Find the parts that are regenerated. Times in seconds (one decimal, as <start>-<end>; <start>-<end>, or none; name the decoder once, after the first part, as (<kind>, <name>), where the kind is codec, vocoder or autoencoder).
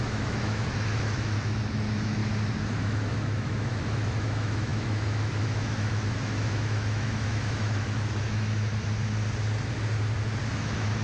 0.0-2.2 (autoencoder, DAC-VAE); 2.8-8.7; 10.5-11.0